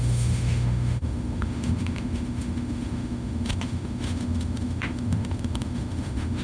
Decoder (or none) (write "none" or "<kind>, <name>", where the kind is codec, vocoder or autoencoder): autoencoder, DAC-VAE